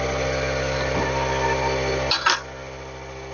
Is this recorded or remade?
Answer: recorded